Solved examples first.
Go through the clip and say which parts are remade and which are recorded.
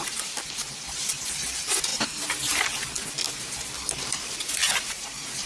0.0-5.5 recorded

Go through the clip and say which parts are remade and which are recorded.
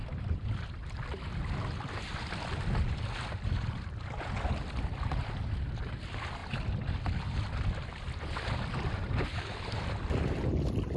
0.0-11.0 recorded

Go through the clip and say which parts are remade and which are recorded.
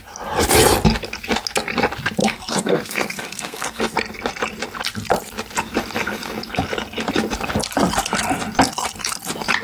0.0-2.2 recorded; 2.2-3.8 remade; 3.8-9.6 recorded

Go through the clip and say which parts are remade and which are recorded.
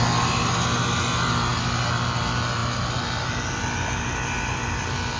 0.0-5.2 recorded